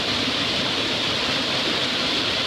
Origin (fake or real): real